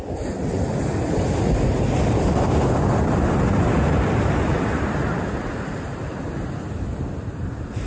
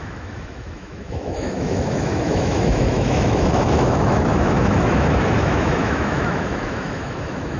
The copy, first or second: second